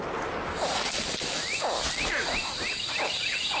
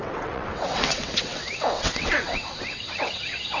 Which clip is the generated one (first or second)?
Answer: second